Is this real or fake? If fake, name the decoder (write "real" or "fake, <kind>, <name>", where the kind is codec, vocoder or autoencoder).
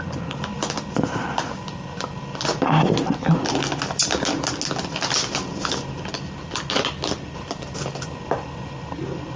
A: real